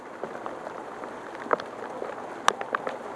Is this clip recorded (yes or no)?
yes